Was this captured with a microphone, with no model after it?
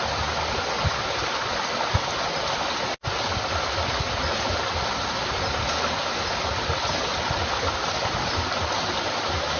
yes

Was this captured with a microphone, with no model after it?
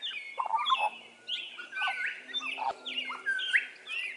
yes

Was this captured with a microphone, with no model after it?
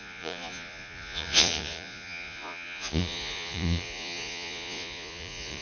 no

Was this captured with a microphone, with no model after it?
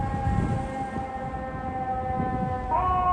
yes